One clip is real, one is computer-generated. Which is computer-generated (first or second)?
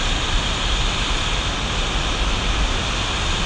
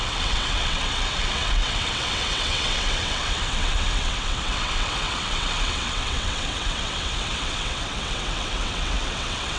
second